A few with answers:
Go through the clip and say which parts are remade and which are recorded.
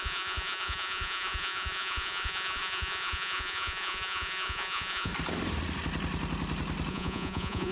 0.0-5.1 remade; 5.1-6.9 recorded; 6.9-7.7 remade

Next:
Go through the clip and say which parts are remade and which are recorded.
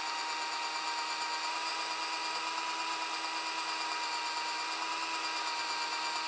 0.0-6.3 recorded